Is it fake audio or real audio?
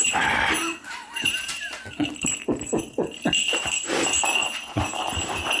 fake